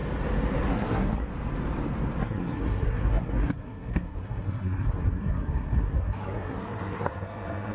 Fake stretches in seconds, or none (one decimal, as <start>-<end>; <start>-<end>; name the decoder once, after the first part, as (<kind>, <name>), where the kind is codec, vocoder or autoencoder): 0.7-1.3 (codec, SNAC); 2.2-7.7